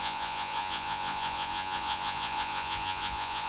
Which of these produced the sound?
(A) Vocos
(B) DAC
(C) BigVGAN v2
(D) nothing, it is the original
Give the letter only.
A